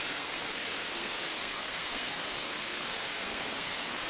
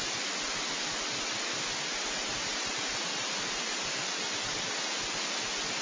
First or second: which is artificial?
first